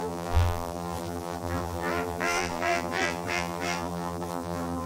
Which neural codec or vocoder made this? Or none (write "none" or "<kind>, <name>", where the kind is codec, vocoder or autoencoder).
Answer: vocoder, BigVGAN v2